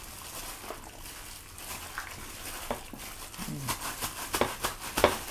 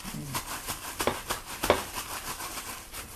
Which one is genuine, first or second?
first